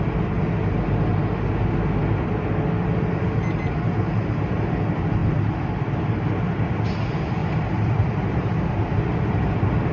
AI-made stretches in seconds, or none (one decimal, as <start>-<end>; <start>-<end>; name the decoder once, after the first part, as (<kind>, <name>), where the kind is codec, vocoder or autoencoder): 5.2-6.0 (vocoder, BigVGAN v2); 7.4-9.9